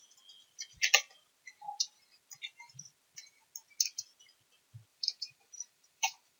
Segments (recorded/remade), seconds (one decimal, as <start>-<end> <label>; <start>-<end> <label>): 0.0-4.9 recorded; 4.9-6.4 remade